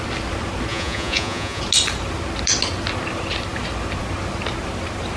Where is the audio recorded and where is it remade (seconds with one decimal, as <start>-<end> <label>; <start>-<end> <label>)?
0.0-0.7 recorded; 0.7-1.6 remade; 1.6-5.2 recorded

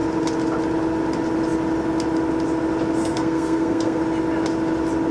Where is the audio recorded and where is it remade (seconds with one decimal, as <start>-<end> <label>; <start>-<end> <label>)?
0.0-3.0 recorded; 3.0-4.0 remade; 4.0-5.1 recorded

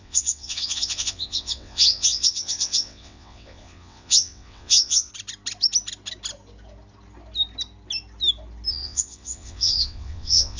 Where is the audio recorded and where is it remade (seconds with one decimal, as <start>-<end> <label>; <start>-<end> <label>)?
0.0-5.1 remade; 5.1-8.7 recorded; 8.7-10.6 remade

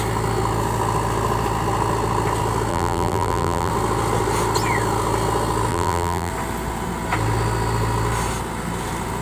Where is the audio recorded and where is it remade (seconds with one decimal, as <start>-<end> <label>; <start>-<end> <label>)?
0.0-2.7 recorded; 2.7-3.7 remade; 3.7-5.7 recorded; 5.7-6.3 remade; 6.3-9.2 recorded